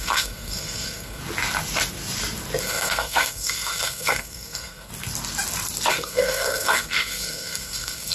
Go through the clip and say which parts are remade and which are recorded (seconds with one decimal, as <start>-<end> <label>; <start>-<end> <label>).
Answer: 0.0-1.2 remade; 1.2-2.6 recorded; 2.6-4.9 remade; 4.9-5.9 recorded; 5.9-8.1 remade